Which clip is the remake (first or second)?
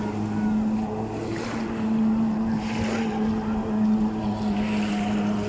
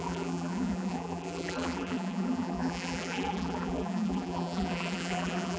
second